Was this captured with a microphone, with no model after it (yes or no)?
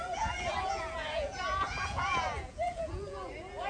no